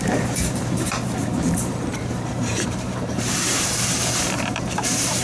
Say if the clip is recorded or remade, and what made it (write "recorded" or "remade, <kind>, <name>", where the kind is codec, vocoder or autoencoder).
remade, vocoder, BigVGAN v2